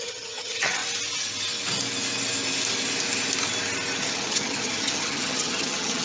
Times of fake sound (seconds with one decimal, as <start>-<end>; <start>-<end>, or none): 0.0-0.8; 4.0-6.0